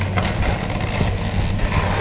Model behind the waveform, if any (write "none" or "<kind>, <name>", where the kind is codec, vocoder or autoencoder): none